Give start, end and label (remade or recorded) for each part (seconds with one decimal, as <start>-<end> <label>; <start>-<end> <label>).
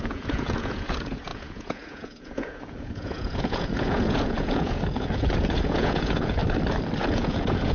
0.0-6.4 remade; 6.4-7.0 recorded; 7.0-7.7 remade